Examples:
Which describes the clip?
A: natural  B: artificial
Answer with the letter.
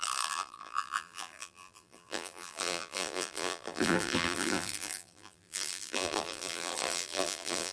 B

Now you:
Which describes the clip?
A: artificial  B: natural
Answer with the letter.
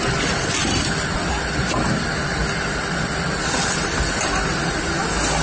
B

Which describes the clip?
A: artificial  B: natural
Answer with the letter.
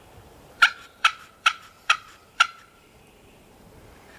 A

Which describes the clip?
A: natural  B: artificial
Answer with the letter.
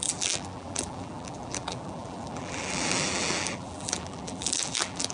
B